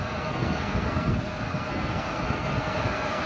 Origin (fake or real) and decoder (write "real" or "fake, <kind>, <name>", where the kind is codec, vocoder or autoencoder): fake, codec, SNAC